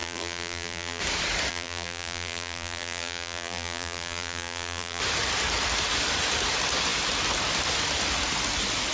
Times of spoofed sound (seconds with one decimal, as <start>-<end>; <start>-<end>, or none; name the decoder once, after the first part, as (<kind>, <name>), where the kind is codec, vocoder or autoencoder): 0.0-1.0 (vocoder, BigVGAN v2); 1.5-5.0